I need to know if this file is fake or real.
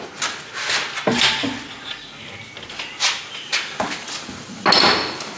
real